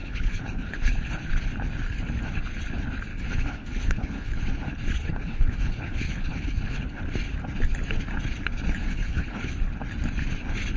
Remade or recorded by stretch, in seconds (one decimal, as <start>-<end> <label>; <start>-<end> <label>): 0.0-1.3 remade; 1.3-3.1 recorded; 3.1-4.4 remade; 4.4-4.9 recorded; 4.9-7.0 remade; 7.0-8.8 recorded; 8.8-9.6 remade; 9.6-10.8 recorded